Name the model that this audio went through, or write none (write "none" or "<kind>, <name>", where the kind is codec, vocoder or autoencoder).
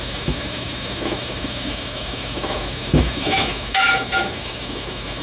autoencoder, DAC-VAE